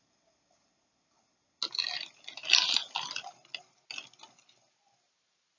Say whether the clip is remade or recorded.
recorded